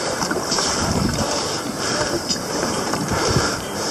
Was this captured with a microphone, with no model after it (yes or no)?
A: no